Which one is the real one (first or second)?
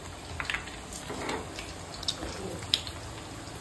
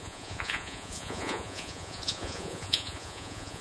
first